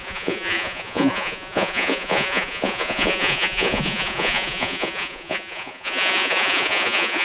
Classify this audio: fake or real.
fake